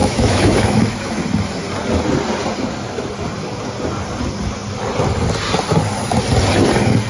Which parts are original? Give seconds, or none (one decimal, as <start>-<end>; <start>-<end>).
1.2-7.1